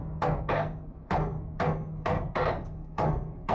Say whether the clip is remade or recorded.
remade